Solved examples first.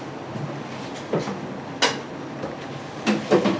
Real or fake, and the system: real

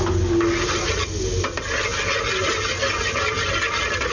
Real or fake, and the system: real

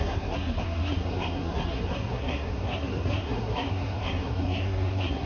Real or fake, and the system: fake, codec, SNAC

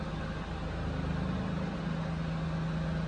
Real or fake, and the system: real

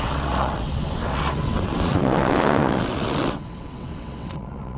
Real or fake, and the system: fake, vocoder, WaveNeXt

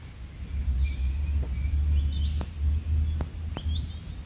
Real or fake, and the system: real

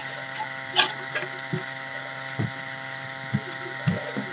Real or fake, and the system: real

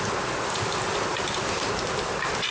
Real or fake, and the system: real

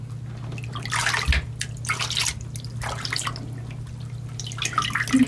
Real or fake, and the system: real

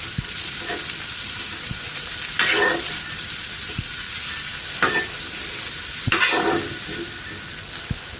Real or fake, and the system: real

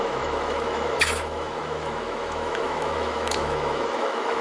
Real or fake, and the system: fake, autoencoder, DAC-VAE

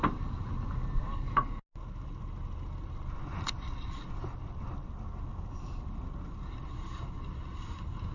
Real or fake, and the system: real